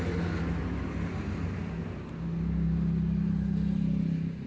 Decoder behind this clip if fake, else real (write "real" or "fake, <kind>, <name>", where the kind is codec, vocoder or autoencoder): real